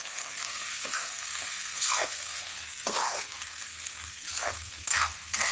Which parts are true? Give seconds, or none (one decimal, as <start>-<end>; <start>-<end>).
none

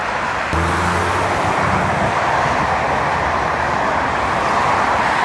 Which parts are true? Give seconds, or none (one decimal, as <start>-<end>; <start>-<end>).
0.0-5.2